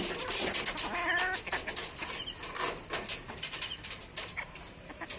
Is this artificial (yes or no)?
no